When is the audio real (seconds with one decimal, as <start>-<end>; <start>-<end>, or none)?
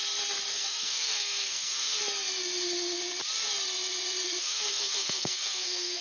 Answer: 0.0-0.5; 2.0-4.4